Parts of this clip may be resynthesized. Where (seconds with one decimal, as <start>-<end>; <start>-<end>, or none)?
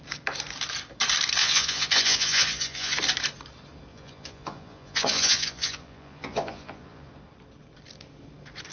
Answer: 1.4-3.0; 3.9-7.1